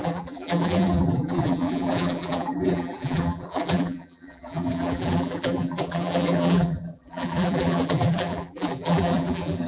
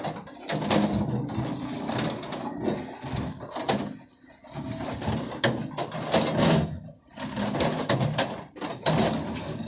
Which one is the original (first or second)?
second